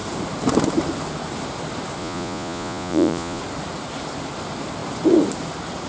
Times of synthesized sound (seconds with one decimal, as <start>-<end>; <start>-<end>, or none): 2.0-3.4